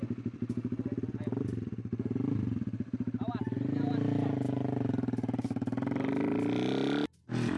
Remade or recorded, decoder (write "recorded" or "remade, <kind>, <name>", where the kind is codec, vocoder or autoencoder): recorded